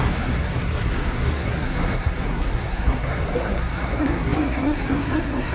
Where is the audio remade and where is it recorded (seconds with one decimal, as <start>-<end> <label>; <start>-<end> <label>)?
0.0-5.5 remade